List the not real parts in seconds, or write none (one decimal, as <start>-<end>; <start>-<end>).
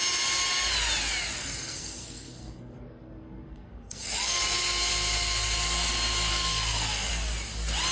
1.4-4.4; 6.3-7.1